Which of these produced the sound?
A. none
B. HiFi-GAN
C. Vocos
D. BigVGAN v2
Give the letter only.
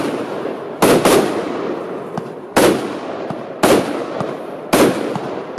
A